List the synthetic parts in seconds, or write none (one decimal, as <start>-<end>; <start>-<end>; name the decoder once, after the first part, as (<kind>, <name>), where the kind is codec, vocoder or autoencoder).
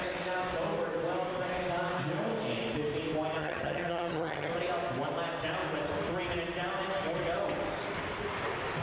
3.4-4.5 (vocoder, HiFi-GAN)